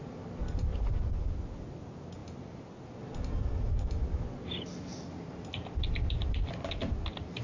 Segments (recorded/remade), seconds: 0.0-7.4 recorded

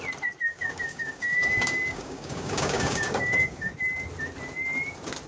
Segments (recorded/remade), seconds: 0.0-0.5 recorded; 0.5-3.7 remade; 3.7-5.3 recorded

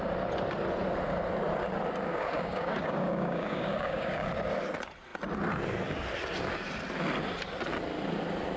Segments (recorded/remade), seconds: 0.0-2.1 recorded; 2.1-4.3 remade; 4.3-8.6 recorded

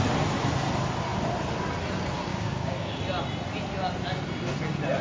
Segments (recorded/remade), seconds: 0.0-2.3 recorded; 2.3-3.0 remade; 3.0-5.0 recorded

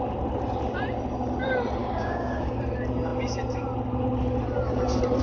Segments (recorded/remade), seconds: 0.0-1.8 recorded; 1.8-2.6 remade; 2.6-5.2 recorded